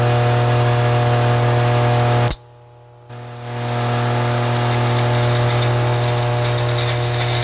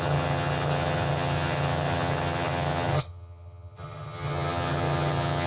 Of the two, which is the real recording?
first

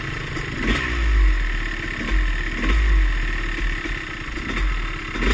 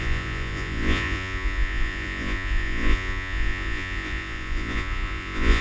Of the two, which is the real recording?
first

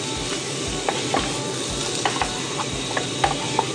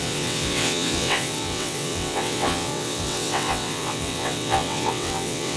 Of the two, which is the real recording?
first